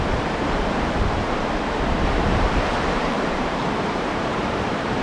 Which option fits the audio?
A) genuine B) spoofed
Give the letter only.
B